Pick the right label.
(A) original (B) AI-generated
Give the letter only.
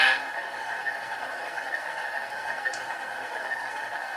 B